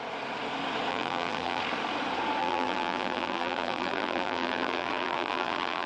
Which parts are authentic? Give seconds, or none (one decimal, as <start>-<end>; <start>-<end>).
0.0-0.9; 1.6-2.4